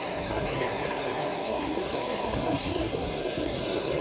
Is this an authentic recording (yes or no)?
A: no